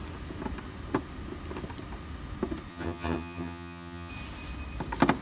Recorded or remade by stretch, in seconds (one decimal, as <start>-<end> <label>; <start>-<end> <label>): 0.0-2.7 recorded; 2.7-4.1 remade; 4.1-5.2 recorded